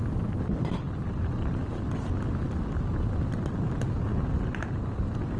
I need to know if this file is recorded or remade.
recorded